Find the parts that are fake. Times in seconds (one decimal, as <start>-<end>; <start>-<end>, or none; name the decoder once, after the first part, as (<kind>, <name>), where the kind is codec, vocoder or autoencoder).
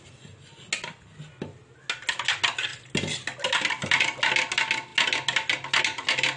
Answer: none